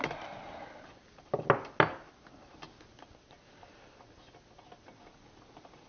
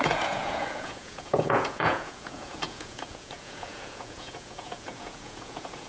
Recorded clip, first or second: first